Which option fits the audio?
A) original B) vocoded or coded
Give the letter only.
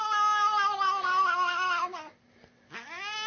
A